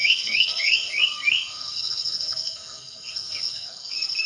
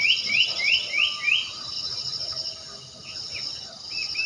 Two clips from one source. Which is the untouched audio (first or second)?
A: second